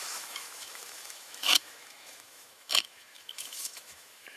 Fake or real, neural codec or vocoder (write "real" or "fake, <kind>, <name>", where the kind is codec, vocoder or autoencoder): fake, autoencoder, DAC-VAE